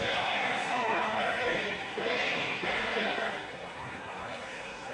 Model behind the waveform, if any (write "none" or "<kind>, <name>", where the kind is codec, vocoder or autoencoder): codec, SNAC